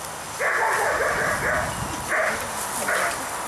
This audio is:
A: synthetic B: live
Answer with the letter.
B